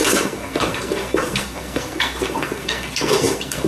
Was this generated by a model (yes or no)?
yes